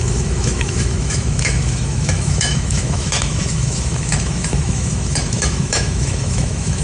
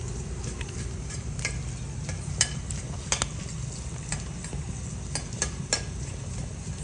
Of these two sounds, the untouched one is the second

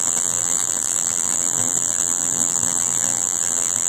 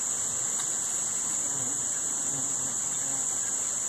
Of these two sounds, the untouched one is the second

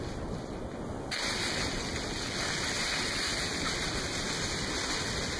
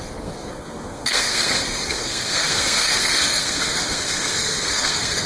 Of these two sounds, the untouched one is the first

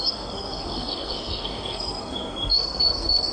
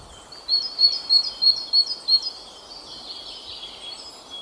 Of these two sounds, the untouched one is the second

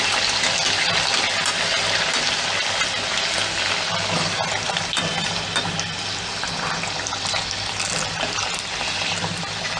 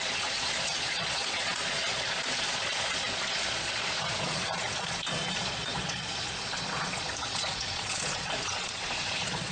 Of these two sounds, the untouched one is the first